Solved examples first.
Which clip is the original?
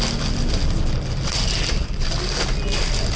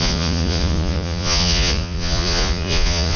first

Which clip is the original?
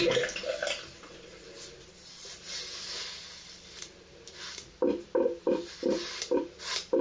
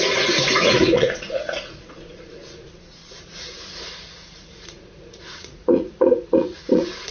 first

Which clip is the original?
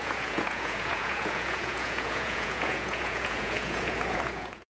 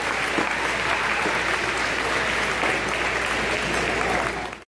second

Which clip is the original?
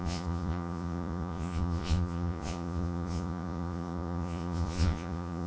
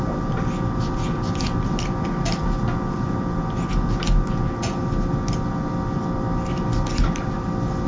second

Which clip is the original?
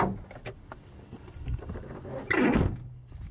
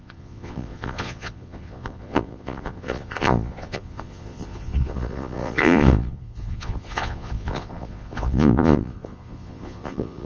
first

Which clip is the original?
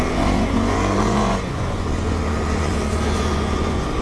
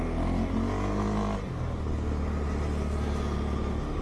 second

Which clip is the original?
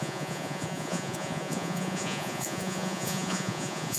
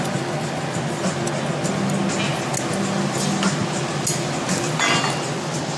second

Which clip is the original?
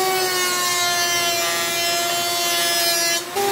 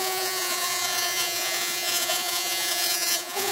first